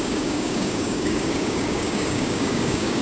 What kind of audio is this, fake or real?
fake